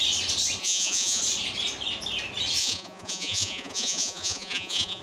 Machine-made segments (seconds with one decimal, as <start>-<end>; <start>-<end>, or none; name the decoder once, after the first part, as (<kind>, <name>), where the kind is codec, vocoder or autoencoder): 0.6-1.2 (vocoder, Vocos); 2.6-5.0

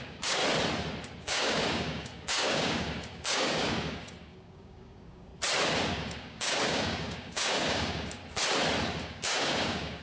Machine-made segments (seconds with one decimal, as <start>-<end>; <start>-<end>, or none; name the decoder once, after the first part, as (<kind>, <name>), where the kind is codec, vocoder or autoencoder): 0.0-0.4 (codec, DAC); 1.2-5.3; 5.9-8.2; 9.0-10.0

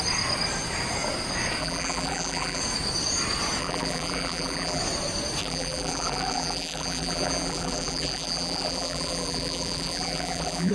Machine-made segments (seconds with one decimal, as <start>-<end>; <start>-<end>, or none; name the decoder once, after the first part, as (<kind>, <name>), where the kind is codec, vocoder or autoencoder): 1.6-2.6 (vocoder, BigVGAN v2); 3.6-4.8; 5.4-10.7

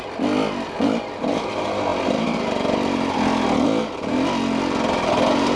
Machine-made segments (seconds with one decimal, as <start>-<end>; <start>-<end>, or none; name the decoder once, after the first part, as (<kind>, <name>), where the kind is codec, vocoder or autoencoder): none

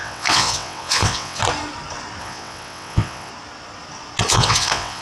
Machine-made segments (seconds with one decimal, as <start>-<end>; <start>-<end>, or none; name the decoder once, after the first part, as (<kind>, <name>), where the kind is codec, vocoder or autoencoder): 0.0-1.4 (vocoder, WaveNeXt); 2.2-3.3; 4.3-5.0

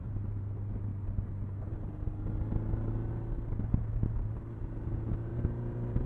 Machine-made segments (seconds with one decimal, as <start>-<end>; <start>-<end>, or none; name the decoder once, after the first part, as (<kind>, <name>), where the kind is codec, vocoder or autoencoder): 0.0-0.9 (vocoder, BigVGAN v2); 4.6-6.1

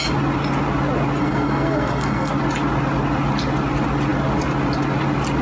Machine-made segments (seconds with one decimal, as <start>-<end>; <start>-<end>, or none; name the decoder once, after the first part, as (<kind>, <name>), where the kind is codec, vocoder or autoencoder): 1.2-2.3 (codec, SNAC)

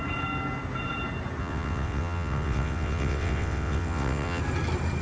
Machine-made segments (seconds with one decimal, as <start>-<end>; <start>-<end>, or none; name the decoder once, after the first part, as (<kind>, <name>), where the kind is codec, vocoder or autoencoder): 1.4-4.4 (vocoder, WaveNeXt)